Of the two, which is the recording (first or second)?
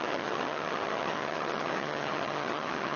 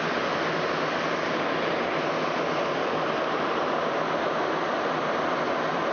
second